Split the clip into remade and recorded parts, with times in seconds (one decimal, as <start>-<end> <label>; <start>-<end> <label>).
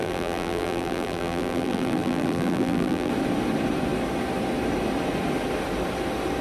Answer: 0.0-3.1 remade; 3.1-6.4 recorded